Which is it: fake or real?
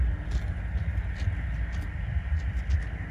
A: real